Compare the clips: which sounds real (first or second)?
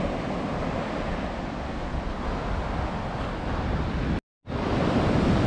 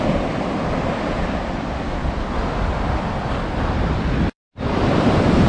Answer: first